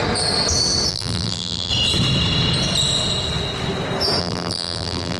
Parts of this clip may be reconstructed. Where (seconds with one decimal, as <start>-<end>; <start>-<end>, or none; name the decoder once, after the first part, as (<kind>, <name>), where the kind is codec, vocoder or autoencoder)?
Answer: 0.9-1.7 (vocoder, BigVGAN v2); 4.2-5.2